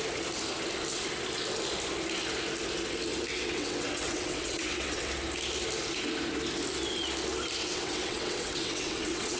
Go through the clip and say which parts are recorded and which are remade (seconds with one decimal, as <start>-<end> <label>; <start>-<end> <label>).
0.0-3.3 recorded; 3.3-5.1 remade; 5.1-7.6 recorded; 7.6-9.4 remade